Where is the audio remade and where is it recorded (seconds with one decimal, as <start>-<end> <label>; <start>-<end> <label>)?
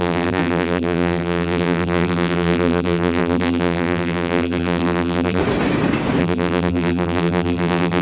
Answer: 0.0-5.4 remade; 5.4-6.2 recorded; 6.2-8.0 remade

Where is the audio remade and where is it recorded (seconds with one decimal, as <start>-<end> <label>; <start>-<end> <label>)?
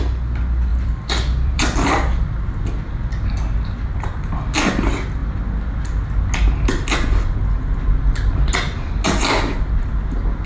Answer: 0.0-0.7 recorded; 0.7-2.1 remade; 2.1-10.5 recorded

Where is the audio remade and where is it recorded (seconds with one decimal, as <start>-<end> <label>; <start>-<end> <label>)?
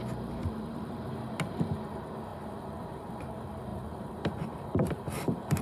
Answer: 0.0-0.4 recorded; 0.4-1.2 remade; 1.2-2.3 recorded; 2.3-3.1 remade; 3.1-3.7 recorded; 3.7-5.6 remade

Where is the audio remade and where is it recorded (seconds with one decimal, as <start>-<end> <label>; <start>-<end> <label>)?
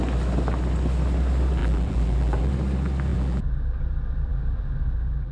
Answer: 0.0-1.6 recorded; 1.6-2.5 remade; 2.5-3.1 recorded; 3.1-3.8 remade; 3.8-4.3 recorded; 4.3-5.3 remade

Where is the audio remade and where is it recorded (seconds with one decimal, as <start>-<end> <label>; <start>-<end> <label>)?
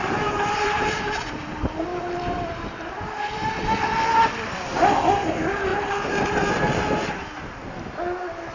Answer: 0.0-1.0 remade; 1.0-1.9 recorded; 1.9-3.9 remade; 3.9-8.5 recorded